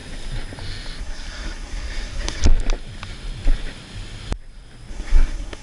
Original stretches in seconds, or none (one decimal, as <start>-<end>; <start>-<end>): 0.0-1.0; 2.4-4.9